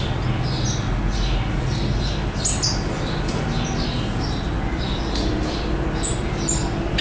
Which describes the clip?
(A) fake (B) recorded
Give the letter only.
B